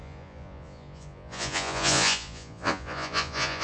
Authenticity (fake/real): fake